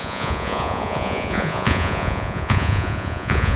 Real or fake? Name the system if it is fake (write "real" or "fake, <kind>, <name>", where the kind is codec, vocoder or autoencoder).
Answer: fake, vocoder, Vocos